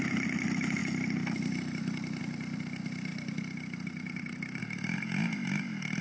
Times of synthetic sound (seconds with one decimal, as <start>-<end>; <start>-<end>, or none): none